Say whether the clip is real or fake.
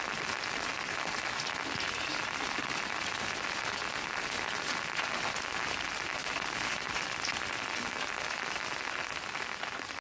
real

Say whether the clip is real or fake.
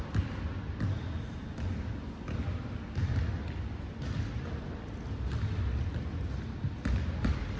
real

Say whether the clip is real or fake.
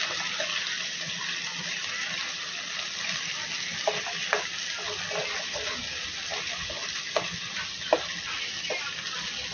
real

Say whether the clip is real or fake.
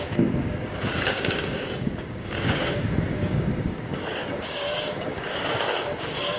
fake